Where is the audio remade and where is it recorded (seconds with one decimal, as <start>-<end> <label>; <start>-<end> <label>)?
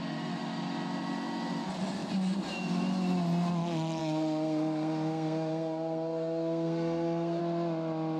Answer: 0.0-4.0 recorded; 4.0-7.4 remade; 7.4-8.2 recorded